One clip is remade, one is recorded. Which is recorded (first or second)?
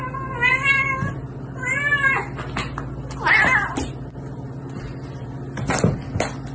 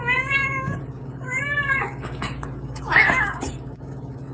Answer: first